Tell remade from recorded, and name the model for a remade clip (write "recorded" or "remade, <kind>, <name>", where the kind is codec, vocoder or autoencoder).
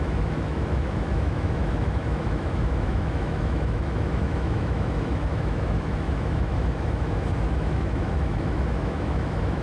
remade, autoencoder, DAC-VAE